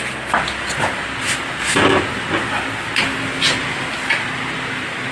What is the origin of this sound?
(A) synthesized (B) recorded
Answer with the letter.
B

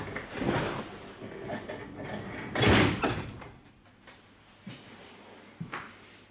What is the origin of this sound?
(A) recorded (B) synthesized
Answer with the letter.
A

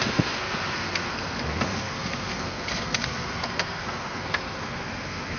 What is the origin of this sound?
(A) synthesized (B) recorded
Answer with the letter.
A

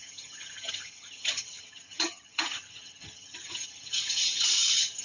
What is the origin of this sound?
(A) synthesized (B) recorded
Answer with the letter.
A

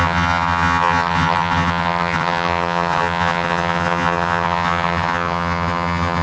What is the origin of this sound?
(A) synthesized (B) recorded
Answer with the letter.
A